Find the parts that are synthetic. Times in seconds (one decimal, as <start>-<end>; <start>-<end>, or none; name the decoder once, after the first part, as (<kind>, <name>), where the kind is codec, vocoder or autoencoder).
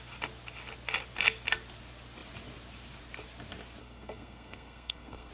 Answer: 3.8-5.3 (codec, SNAC)